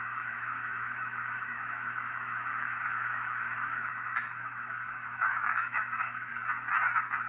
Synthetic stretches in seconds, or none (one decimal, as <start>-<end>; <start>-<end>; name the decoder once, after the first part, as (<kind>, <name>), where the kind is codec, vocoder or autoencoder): 0.0-6.3 (autoencoder, DAC-VAE)